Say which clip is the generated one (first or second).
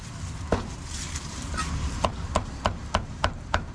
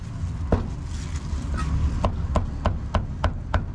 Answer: first